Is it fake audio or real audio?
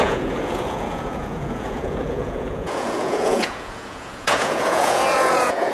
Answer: fake